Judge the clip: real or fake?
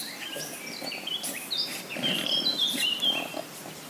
real